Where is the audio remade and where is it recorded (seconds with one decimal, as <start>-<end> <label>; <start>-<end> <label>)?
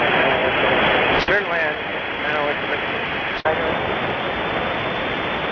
0.0-5.5 recorded